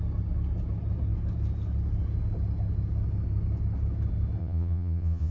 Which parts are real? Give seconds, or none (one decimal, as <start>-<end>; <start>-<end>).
0.0-4.4